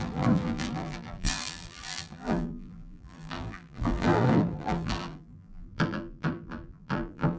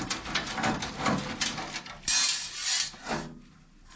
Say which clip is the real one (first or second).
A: second